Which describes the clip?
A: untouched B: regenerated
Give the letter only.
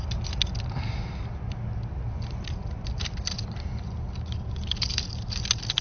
A